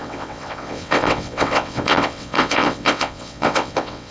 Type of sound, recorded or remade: remade